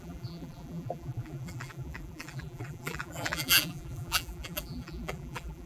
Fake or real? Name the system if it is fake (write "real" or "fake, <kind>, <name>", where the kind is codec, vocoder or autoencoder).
fake, vocoder, BigVGAN v2